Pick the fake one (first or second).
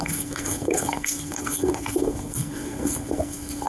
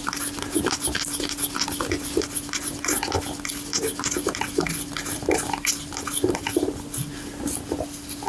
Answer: first